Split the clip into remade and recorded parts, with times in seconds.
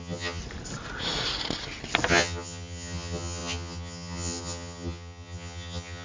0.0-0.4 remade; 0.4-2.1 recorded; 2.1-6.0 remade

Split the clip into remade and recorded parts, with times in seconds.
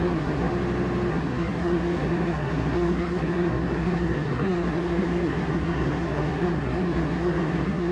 0.0-0.5 remade; 0.5-1.1 recorded; 1.1-7.9 remade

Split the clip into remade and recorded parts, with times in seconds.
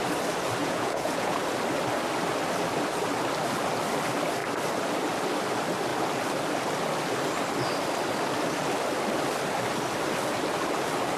0.0-0.6 recorded; 0.6-1.4 remade; 1.4-11.2 recorded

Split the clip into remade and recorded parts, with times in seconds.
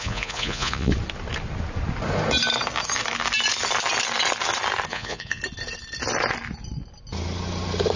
0.0-0.9 remade; 0.9-4.9 recorded; 4.9-5.4 remade; 5.4-8.0 recorded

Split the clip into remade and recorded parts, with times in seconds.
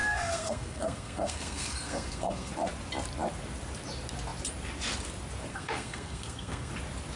0.0-2.5 remade; 2.5-5.5 recorded; 5.5-6.7 remade; 6.7-7.2 recorded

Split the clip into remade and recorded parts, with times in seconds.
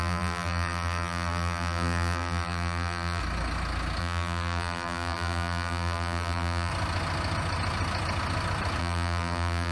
0.0-3.2 remade; 3.2-4.0 recorded; 4.0-6.7 remade; 6.7-8.8 recorded; 8.8-9.7 remade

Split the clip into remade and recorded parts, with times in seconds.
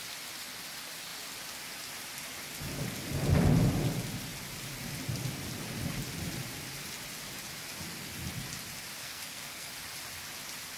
0.0-9.0 recorded; 9.0-9.7 remade; 9.7-10.8 recorded